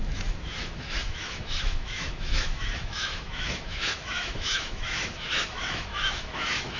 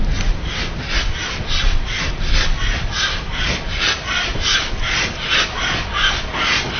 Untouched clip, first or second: second